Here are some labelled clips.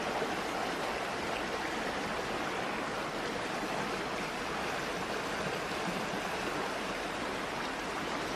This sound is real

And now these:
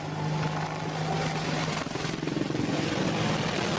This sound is real